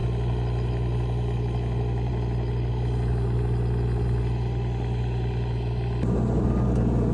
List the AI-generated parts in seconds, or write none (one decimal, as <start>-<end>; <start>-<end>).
none